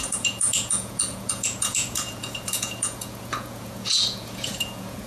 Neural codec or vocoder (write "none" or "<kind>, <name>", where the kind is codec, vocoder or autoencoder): vocoder, Vocos